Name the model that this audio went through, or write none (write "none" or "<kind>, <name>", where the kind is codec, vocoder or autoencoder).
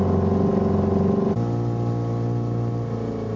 none